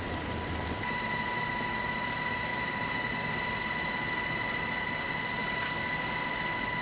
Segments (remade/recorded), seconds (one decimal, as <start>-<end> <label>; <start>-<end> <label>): 0.0-5.4 recorded; 5.4-6.1 remade; 6.1-6.8 recorded